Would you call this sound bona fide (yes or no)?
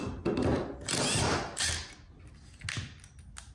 yes